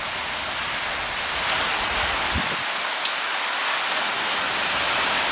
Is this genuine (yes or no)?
yes